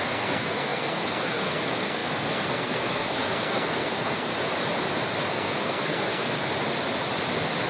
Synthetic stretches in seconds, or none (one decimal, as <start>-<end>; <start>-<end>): 0.0-4.3; 5.3-6.5